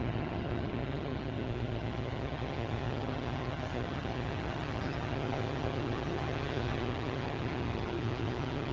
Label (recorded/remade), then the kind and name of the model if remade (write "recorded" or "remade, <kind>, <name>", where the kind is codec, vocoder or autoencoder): remade, vocoder, HiFi-GAN